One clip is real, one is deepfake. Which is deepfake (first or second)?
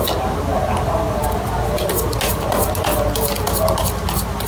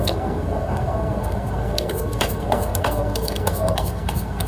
second